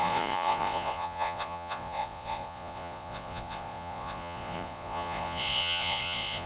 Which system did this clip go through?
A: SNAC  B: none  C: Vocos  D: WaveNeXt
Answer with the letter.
C